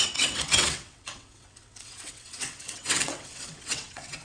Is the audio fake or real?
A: fake